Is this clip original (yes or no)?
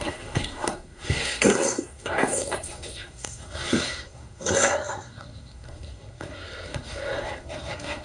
no